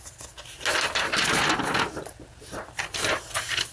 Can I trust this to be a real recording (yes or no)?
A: yes